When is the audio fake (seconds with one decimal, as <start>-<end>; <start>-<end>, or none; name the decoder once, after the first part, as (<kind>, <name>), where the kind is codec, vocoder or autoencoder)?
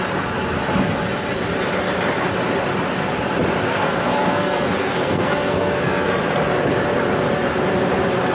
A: 3.7-6.1 (codec, SNAC)